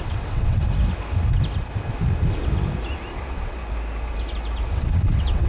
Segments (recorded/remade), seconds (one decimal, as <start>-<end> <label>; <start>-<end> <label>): 0.0-0.6 remade; 0.6-3.1 recorded; 3.1-3.6 remade; 3.6-4.7 recorded; 4.7-5.5 remade